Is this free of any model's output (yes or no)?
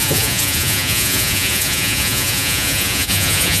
no